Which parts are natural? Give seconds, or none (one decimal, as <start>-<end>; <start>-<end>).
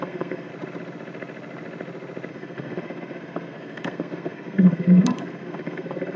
0.5-2.3